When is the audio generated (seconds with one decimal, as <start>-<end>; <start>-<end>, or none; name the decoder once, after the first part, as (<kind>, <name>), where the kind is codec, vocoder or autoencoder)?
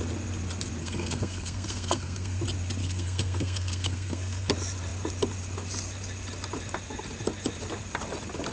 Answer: 0.8-2.4 (codec, SNAC); 2.8-4.5